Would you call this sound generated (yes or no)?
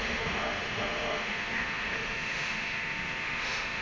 yes